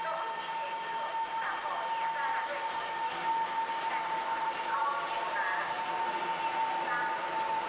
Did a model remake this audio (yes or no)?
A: no